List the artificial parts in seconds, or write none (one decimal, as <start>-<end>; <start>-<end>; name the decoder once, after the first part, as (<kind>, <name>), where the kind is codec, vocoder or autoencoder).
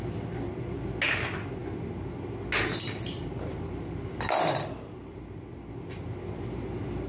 none